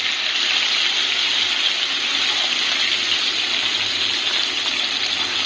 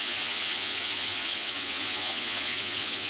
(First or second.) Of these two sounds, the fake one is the second